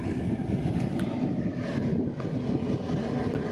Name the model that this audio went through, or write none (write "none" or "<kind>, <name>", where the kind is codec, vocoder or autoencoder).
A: none